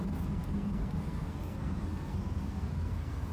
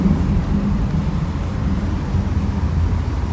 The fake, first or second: first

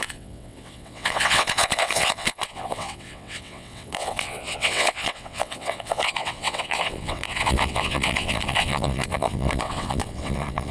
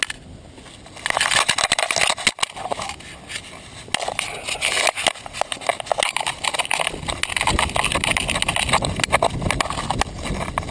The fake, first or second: first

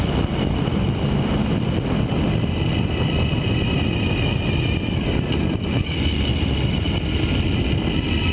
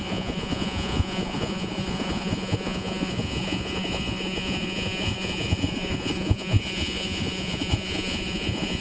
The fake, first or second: second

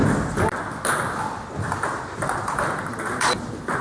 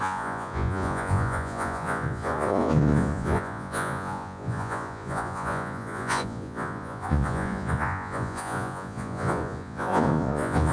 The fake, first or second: second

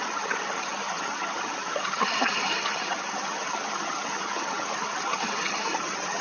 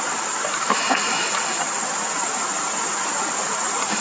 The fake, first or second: first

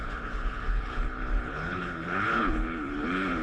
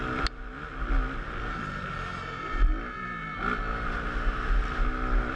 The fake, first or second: first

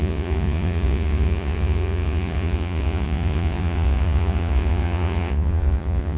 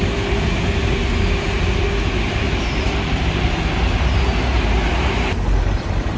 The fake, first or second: first